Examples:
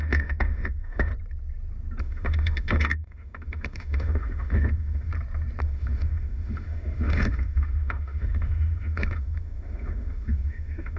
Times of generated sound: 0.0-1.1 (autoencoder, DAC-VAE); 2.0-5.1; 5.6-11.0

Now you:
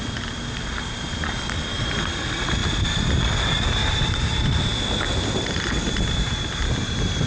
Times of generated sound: 2.6-7.3 (vocoder, BigVGAN v2)

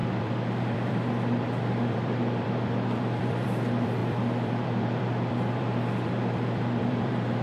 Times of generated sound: 0.0-7.4 (vocoder, BigVGAN v2)

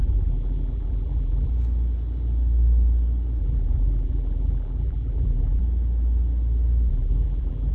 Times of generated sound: 0.0-1.5 (vocoder, BigVGAN v2); 3.4-5.6; 6.9-7.7

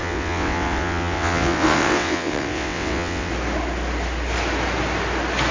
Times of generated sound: 0.0-3.3 (vocoder, WaveNeXt)

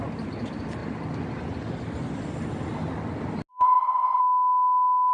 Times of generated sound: 3.5-4.2 (codec, HILCodec)